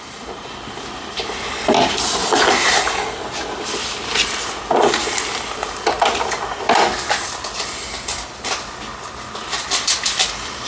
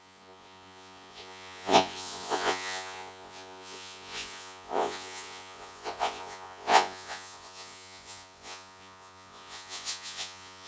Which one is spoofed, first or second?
second